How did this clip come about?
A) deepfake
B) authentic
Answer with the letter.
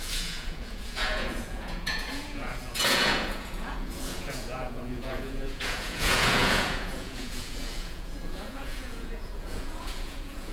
A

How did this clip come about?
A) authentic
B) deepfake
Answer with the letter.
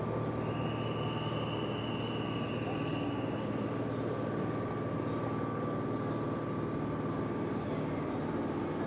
A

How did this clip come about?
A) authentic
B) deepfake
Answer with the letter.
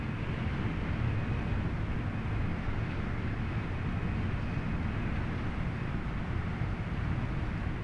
A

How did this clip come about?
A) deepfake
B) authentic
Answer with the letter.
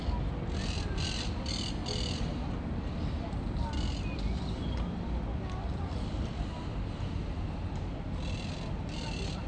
B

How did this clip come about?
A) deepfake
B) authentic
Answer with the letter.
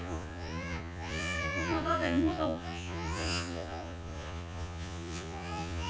A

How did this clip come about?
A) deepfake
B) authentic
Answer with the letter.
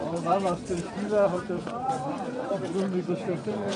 A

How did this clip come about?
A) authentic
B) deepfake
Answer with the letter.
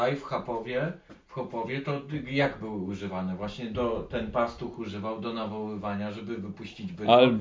A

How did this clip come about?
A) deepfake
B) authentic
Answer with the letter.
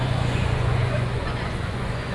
A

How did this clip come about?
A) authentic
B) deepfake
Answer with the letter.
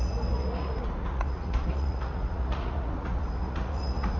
B